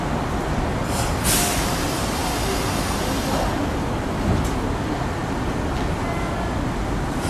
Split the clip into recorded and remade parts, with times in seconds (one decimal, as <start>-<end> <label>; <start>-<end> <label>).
0.0-7.3 recorded

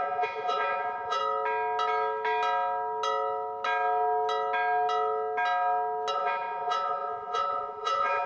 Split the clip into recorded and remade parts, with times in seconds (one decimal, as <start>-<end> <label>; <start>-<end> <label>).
0.0-1.2 remade; 1.2-6.1 recorded; 6.1-8.3 remade

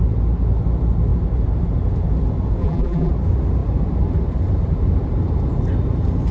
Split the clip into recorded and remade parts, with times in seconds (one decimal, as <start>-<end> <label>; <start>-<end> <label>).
0.0-2.6 recorded; 2.6-3.1 remade; 3.1-6.3 recorded

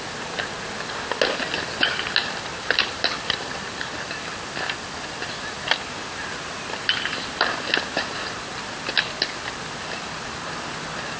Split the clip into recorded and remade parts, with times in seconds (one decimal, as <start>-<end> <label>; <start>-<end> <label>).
0.0-2.2 recorded; 2.2-4.1 remade; 4.1-11.2 recorded

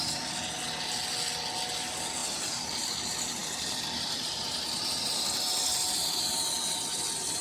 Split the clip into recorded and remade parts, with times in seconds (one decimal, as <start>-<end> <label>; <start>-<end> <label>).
0.0-2.2 recorded; 2.2-2.9 remade; 2.9-3.4 recorded; 3.4-5.2 remade; 5.2-7.4 recorded

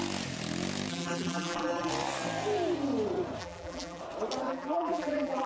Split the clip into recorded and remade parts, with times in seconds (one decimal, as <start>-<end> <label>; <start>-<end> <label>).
0.0-0.9 recorded; 0.9-1.9 remade; 1.9-3.4 recorded; 3.4-4.0 remade; 4.0-4.5 recorded; 4.5-5.5 remade

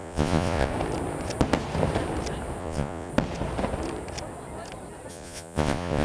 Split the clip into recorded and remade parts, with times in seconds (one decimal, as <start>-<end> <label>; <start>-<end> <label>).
0.0-0.7 remade; 0.7-2.6 recorded; 2.6-3.1 remade; 3.1-5.1 recorded; 5.1-6.0 remade

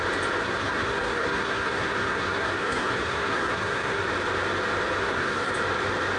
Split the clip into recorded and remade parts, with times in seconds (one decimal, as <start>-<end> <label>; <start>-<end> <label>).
0.0-0.4 recorded; 0.4-4.1 remade; 4.1-5.0 recorded; 5.0-5.5 remade; 5.5-6.2 recorded